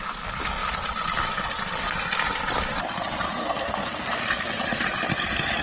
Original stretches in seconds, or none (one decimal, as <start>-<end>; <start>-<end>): 0.0-3.4; 4.2-5.6